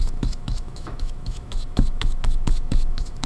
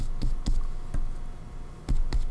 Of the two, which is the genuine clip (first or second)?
second